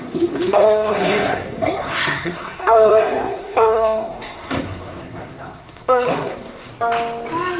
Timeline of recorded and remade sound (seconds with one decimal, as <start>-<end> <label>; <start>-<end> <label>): 0.0-6.7 remade; 6.7-7.6 recorded